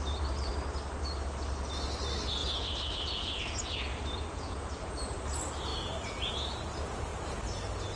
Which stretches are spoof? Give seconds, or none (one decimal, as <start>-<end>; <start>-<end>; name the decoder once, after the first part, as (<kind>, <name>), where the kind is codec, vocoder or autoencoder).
2.4-4.9 (vocoder, Vocos); 5.7-6.3